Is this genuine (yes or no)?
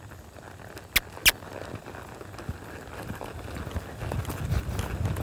yes